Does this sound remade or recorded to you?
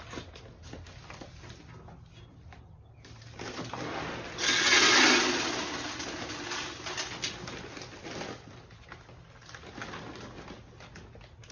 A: recorded